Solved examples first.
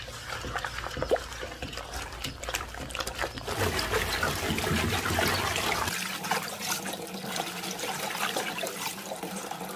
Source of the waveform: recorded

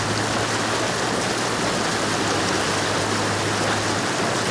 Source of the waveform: recorded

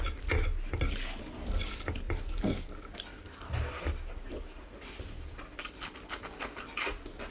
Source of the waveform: recorded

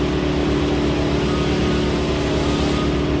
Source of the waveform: recorded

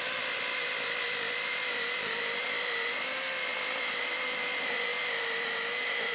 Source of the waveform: remade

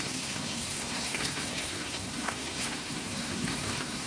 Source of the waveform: remade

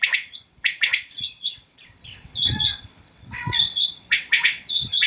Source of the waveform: remade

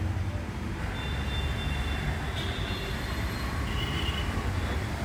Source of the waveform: recorded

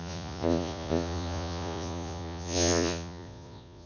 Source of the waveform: remade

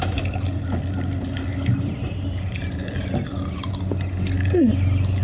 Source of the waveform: recorded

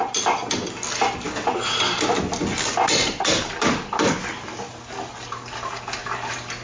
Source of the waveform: recorded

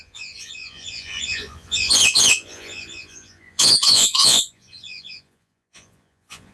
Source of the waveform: remade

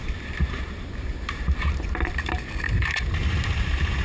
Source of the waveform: remade